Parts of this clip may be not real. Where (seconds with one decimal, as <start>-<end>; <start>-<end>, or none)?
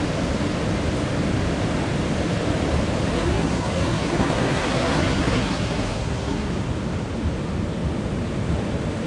3.1-6.5